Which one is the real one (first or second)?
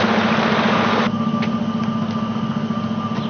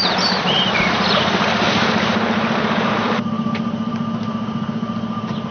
first